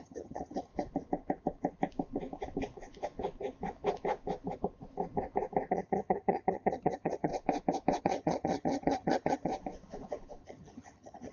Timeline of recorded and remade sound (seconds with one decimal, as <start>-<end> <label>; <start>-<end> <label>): 0.0-0.7 remade; 0.7-5.7 recorded; 5.7-7.3 remade; 7.3-8.0 recorded; 8.0-9.5 remade; 9.5-10.4 recorded; 10.4-11.3 remade